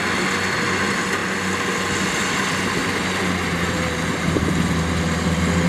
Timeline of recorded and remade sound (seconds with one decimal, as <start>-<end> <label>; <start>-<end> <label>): 0.0-2.8 recorded; 2.8-4.5 remade; 4.5-5.7 recorded